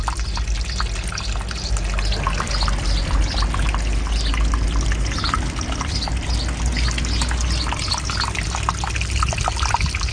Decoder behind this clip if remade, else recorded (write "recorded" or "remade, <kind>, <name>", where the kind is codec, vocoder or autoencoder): recorded